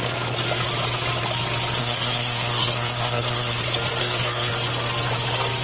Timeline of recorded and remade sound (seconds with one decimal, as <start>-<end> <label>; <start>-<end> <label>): 0.0-1.8 recorded; 1.8-3.6 remade; 3.6-4.0 recorded; 4.0-4.5 remade; 4.5-5.6 recorded